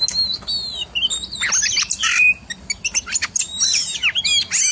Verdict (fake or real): real